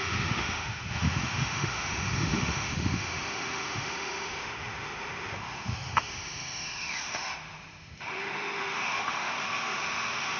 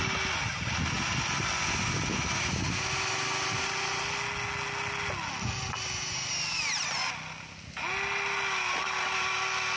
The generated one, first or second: first